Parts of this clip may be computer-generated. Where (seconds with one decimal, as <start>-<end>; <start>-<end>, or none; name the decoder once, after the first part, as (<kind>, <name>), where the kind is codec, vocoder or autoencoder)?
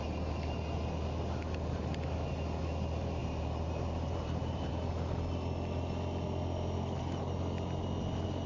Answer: 3.2-4.7 (vocoder, BigVGAN v2)